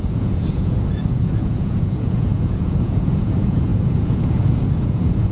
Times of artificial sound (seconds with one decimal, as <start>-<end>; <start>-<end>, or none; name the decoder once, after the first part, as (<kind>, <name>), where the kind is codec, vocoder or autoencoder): 0.0-5.3 (vocoder, Vocos)